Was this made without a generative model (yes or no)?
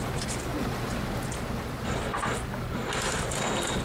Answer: yes